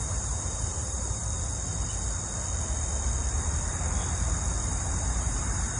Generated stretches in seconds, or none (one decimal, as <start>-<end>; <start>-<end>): 0.0-1.2; 4.7-5.8